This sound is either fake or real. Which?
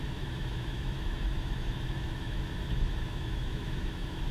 fake